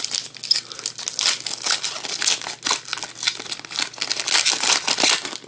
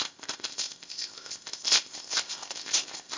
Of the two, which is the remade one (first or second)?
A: second